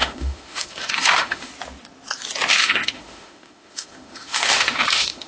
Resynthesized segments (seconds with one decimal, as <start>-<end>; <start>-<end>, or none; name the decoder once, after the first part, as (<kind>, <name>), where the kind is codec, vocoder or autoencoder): 0.0-1.5 (autoencoder, DAC-VAE); 2.6-5.3